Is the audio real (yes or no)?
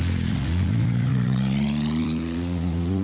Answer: no